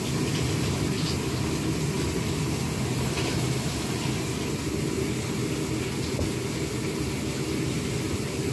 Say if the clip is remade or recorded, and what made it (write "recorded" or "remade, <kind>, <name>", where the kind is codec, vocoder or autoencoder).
recorded